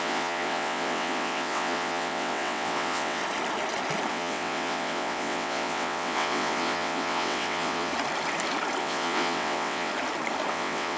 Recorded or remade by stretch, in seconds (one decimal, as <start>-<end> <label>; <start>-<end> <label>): 0.0-3.2 remade; 3.2-4.1 recorded; 4.1-7.9 remade; 7.9-8.8 recorded; 8.8-9.9 remade; 9.9-10.5 recorded; 10.5-11.0 remade